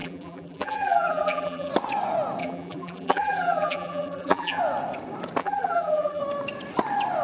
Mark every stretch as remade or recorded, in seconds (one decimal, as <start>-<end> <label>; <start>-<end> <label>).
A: 0.0-1.7 remade; 1.7-2.4 recorded; 2.4-4.6 remade; 4.6-5.4 recorded; 5.4-6.2 remade; 6.2-7.2 recorded